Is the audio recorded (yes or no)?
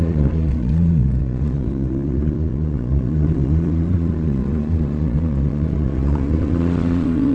no